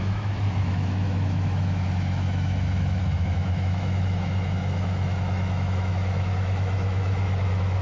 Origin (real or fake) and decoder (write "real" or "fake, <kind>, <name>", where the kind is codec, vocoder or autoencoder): fake, autoencoder, DAC-VAE